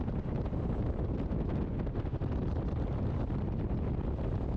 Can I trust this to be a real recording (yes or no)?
yes